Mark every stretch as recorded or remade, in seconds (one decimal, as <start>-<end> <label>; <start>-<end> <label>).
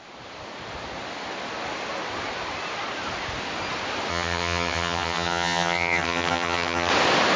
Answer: 0.0-4.1 recorded; 4.1-6.9 remade; 6.9-7.4 recorded